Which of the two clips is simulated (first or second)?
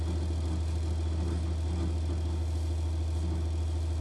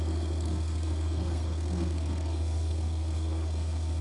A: second